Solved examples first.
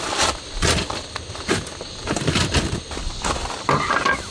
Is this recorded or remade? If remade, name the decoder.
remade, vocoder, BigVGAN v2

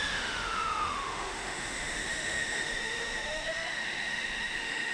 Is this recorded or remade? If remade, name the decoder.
remade, autoencoder, DAC-VAE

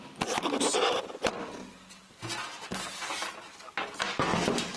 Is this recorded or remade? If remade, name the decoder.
recorded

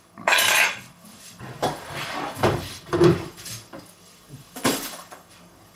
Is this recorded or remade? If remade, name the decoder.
remade, codec, DAC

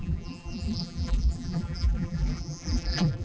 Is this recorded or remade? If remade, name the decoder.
remade, vocoder, BigVGAN v2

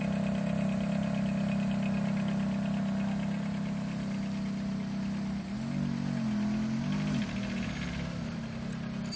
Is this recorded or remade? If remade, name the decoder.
recorded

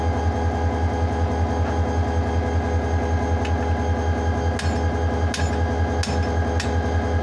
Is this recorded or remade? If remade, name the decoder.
recorded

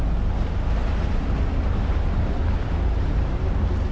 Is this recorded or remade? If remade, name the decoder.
recorded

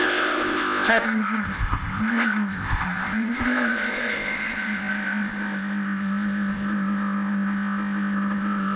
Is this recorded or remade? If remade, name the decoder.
remade, codec, ZipCodec